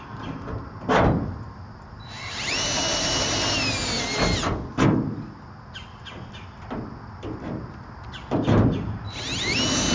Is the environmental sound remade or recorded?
recorded